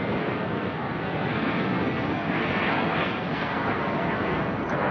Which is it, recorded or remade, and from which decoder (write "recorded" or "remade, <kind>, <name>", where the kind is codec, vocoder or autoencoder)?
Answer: remade, codec, SNAC